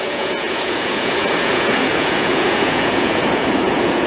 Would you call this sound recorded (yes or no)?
no